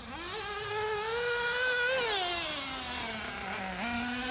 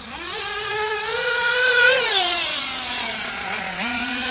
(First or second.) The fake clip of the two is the second